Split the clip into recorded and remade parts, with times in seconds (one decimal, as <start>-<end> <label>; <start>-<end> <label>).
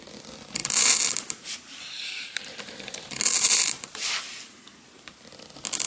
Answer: 0.0-0.6 recorded; 0.6-4.1 remade; 4.1-5.9 recorded